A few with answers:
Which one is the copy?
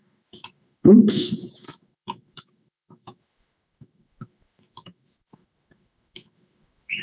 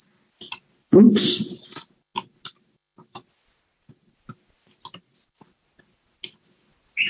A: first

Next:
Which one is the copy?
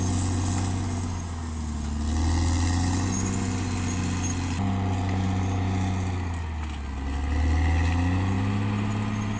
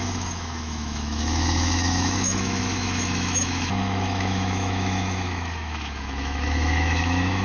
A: second